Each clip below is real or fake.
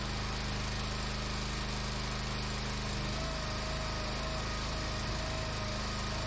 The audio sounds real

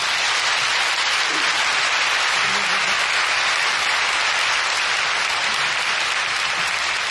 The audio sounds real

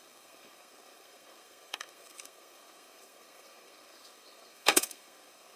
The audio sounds fake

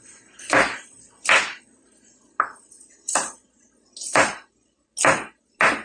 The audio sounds real